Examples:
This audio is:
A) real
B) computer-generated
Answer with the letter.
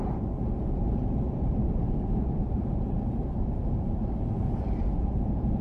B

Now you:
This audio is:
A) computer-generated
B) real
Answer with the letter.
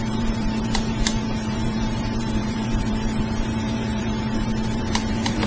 A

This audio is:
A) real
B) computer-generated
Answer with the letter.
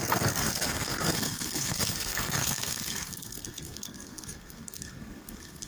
B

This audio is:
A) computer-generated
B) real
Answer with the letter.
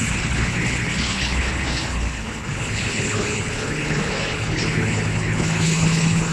A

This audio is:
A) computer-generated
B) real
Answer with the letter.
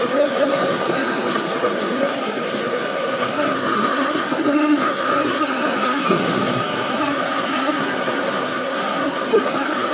A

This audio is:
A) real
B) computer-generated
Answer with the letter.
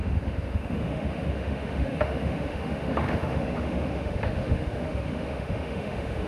B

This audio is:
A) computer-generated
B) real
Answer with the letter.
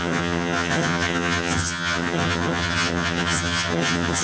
A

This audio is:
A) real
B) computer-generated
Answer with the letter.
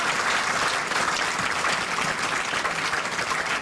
A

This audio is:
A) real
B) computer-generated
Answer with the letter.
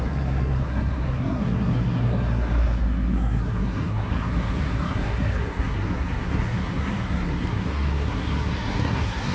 B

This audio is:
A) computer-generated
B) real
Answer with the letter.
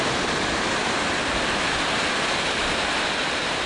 B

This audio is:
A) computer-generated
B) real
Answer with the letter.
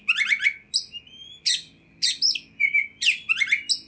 B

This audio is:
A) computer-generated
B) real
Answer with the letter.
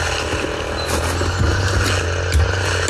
B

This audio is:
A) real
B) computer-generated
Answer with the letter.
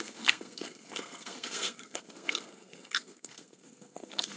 B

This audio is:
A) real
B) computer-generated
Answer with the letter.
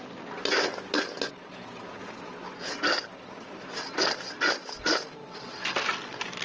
A